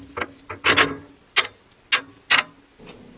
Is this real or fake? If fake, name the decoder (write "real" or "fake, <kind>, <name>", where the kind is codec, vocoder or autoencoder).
real